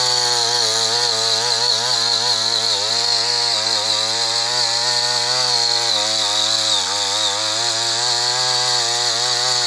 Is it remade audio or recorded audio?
recorded